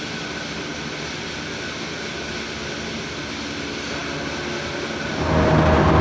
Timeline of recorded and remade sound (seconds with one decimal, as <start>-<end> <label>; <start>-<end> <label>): 0.0-6.0 recorded